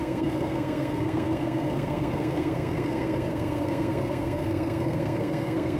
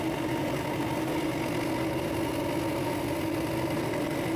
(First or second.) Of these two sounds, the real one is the second